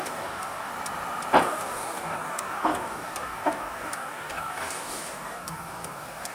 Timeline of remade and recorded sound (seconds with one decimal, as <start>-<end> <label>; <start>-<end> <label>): 0.0-0.7 remade; 0.7-1.4 recorded; 1.4-6.3 remade